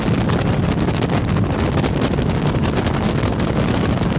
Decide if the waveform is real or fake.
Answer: real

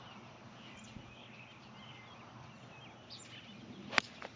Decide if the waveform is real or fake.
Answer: real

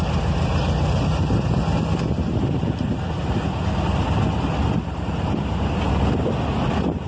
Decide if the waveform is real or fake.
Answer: real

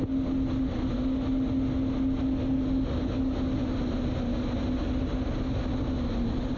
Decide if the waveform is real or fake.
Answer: real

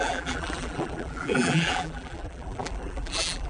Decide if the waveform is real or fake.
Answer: fake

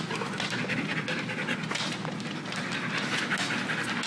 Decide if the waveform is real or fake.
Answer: real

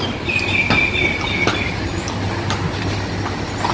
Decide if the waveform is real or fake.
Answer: real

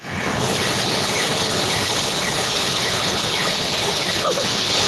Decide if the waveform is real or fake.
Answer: fake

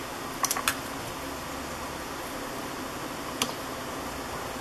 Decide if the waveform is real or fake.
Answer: real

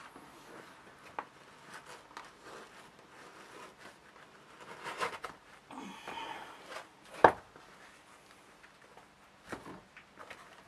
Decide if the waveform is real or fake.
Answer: real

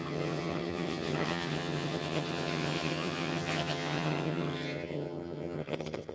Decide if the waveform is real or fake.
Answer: fake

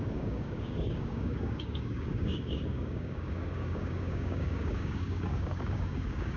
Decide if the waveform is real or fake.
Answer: fake